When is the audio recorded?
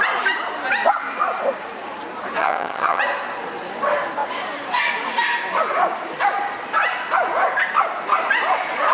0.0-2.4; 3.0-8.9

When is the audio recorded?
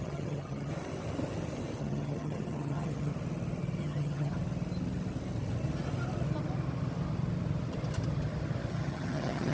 0.7-1.8; 3.1-3.8; 4.3-8.7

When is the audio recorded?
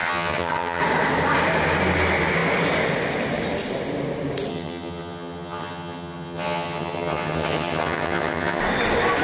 0.8-4.5; 8.6-9.2